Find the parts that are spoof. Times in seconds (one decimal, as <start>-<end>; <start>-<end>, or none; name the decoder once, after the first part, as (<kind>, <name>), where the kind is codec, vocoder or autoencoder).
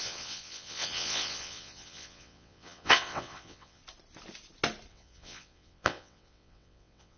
0.0-3.8 (vocoder, WaveNeXt); 4.9-7.2